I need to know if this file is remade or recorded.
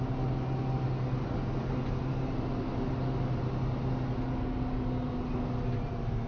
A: recorded